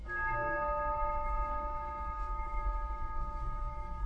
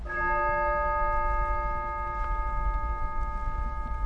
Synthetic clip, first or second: first